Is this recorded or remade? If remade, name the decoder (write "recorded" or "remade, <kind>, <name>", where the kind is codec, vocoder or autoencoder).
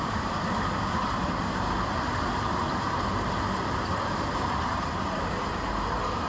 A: remade, vocoder, BigVGAN v2